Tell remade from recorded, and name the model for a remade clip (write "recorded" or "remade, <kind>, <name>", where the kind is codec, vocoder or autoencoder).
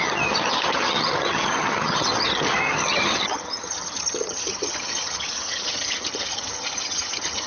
remade, vocoder, HiFi-GAN